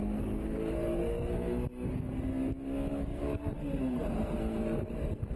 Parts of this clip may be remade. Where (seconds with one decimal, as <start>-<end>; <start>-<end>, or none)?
0.0-2.3; 2.9-5.4